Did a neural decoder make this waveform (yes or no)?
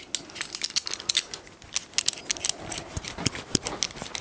no